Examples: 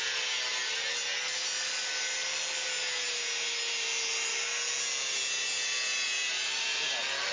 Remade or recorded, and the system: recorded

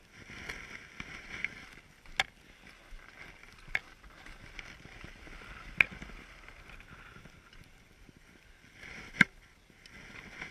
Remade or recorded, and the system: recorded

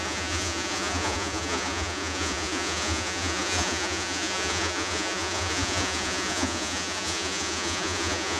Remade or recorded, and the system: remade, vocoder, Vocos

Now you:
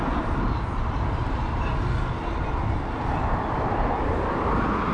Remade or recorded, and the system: recorded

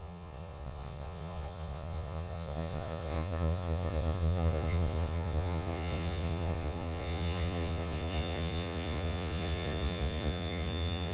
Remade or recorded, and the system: remade, vocoder, Vocos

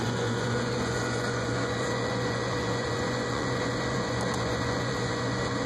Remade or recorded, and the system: remade, vocoder, Vocos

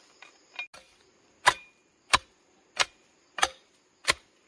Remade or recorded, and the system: recorded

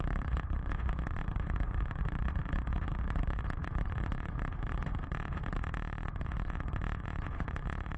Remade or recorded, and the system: remade, vocoder, Vocos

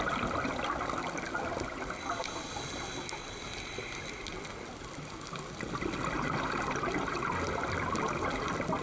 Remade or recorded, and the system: recorded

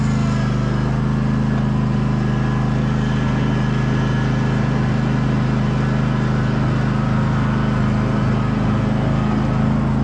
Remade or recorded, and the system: recorded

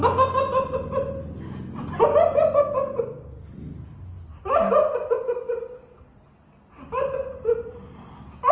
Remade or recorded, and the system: recorded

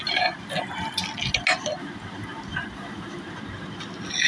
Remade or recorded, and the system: recorded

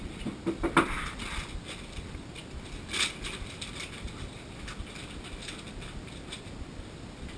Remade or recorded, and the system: recorded